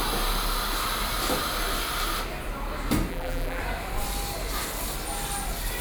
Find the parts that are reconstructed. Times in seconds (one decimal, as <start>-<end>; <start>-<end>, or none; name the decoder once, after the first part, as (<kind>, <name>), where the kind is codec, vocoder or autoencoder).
3.1-3.6 (vocoder, BigVGAN v2)

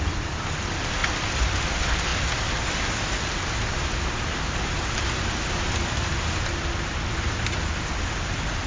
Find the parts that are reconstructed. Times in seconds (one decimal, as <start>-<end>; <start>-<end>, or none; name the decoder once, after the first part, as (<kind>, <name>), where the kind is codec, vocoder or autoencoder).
none